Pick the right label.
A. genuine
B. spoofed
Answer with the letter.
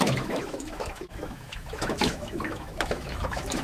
B